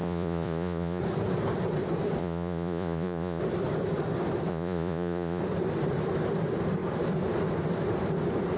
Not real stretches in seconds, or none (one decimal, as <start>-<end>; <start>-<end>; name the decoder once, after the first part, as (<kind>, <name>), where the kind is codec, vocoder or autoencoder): 0.0-1.0 (vocoder, Vocos); 2.2-3.4; 4.5-5.4